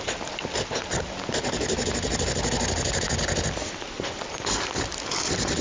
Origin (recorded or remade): recorded